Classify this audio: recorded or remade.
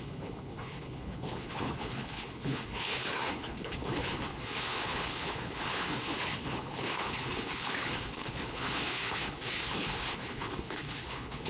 remade